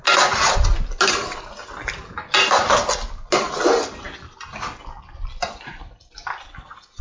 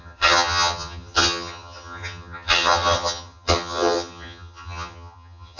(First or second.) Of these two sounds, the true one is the first